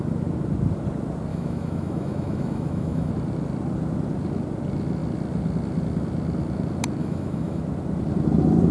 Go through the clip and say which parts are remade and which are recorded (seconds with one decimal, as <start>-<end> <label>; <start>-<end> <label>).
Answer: 0.0-1.3 recorded; 1.3-3.1 remade; 3.1-7.0 recorded; 7.0-7.6 remade; 7.6-8.7 recorded